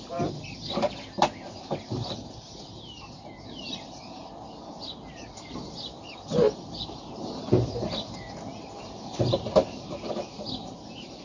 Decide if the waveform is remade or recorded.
recorded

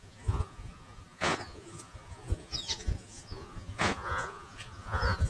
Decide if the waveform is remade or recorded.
remade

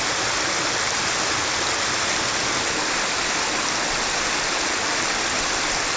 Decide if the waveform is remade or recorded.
recorded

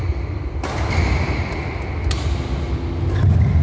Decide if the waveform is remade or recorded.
recorded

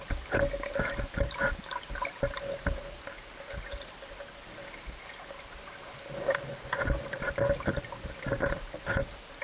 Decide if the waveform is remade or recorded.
recorded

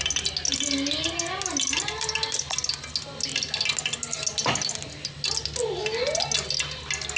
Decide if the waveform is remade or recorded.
recorded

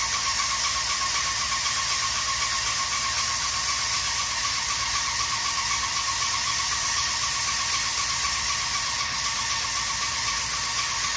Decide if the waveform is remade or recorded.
recorded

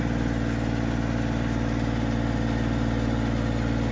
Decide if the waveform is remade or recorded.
recorded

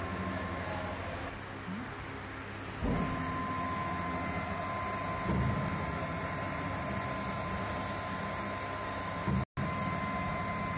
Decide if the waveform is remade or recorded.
recorded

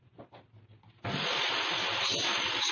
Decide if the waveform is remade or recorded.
recorded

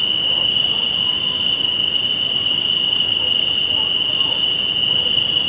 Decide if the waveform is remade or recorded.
recorded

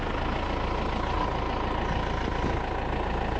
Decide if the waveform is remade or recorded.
recorded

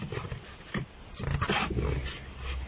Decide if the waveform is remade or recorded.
recorded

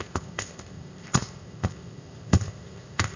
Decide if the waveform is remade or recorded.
remade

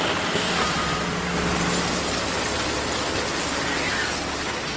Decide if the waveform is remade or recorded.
recorded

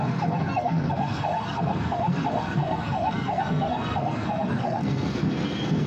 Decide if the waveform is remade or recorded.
remade